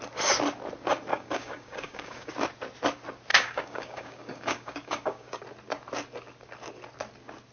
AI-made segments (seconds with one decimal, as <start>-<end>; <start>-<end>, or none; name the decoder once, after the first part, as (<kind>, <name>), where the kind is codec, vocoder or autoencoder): 1.1-2.3 (codec, DAC); 3.3-5.4